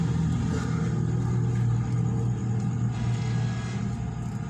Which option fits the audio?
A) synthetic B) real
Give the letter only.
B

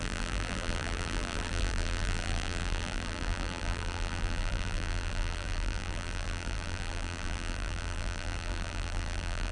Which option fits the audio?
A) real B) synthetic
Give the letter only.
B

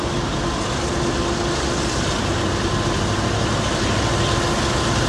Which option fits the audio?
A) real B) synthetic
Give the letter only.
A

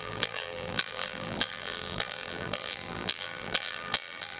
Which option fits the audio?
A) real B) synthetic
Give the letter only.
B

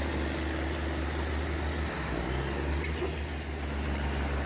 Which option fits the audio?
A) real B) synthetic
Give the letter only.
A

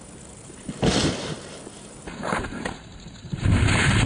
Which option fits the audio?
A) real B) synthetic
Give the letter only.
B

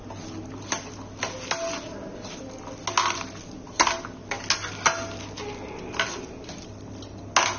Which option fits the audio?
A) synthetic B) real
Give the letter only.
B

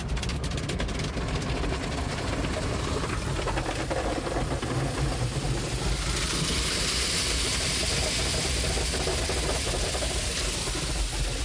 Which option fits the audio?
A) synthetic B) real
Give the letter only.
B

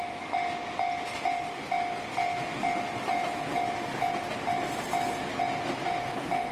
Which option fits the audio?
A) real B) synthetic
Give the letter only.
A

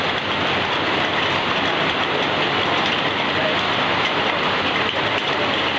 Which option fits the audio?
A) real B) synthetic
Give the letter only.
B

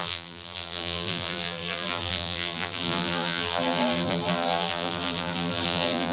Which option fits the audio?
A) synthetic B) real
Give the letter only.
A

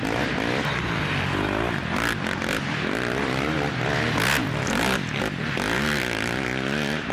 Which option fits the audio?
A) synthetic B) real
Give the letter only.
B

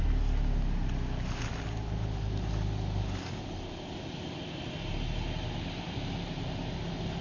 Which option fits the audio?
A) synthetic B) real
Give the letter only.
B